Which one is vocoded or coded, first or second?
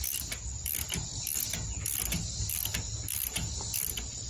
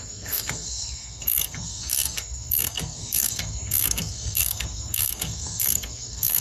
second